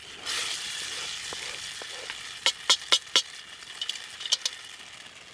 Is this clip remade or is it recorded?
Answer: recorded